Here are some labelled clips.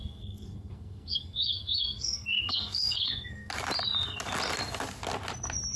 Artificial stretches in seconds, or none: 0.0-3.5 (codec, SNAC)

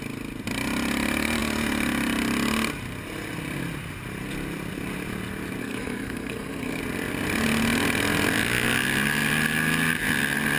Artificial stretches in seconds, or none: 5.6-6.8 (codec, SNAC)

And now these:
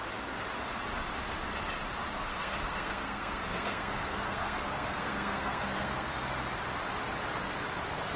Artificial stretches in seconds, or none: 2.3-6.1 (codec, SNAC)

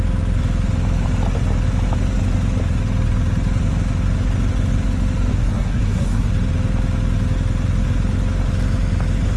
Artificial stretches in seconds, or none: 5.3-6.3 (codec, SNAC)

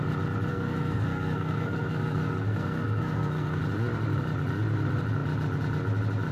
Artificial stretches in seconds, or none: 0.5-3.6 (codec, SNAC)

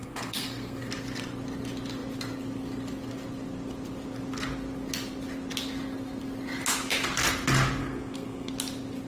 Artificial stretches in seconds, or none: 0.0-0.9 (codec, SNAC); 7.8-8.5